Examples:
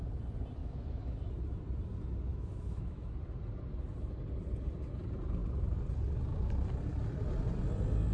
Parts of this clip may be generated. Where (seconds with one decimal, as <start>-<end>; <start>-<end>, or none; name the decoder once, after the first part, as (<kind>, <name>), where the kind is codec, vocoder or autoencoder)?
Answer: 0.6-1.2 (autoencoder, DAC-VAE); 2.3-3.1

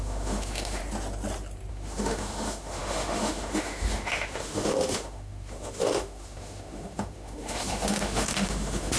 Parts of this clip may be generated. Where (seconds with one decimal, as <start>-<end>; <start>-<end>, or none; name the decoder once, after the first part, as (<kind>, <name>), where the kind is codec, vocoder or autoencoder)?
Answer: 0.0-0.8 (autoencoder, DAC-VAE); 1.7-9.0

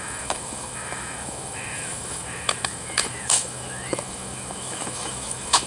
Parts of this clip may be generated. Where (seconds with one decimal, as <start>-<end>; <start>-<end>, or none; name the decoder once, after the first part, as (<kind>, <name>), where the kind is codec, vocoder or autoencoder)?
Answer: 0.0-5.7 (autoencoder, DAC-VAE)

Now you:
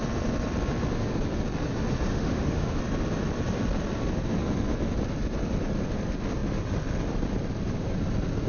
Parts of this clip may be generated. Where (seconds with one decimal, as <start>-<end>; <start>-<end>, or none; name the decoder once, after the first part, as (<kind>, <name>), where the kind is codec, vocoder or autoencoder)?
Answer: 2.1-2.8 (autoencoder, DAC-VAE)

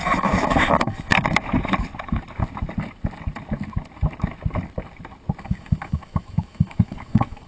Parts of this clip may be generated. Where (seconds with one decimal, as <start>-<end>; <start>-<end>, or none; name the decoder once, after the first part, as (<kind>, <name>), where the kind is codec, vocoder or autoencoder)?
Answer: 0.0-1.1 (autoencoder, DAC-VAE); 5.4-7.5